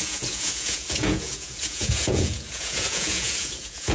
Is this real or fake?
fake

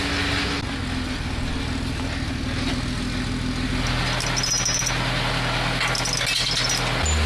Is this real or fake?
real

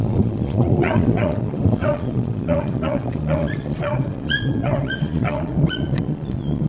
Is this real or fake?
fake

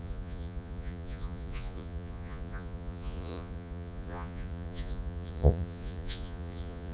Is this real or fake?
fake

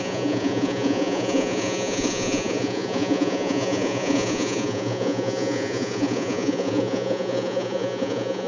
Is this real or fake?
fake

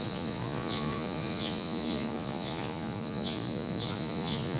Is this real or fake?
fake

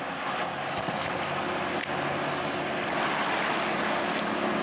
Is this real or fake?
real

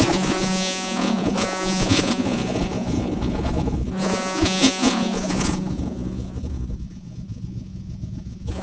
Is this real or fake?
fake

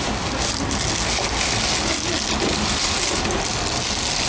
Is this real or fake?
real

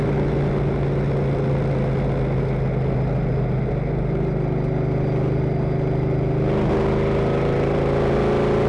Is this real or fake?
real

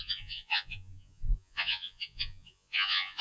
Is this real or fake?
fake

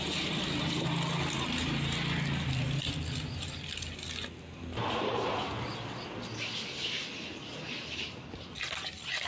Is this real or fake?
real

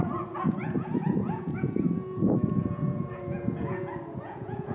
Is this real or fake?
fake